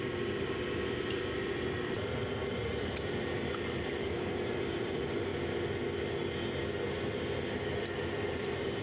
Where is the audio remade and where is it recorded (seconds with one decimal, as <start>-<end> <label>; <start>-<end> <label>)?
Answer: 0.0-5.3 remade; 5.3-8.3 recorded; 8.3-8.8 remade